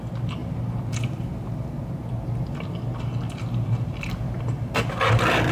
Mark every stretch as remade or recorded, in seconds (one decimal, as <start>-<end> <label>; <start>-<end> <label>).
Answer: 0.0-5.5 recorded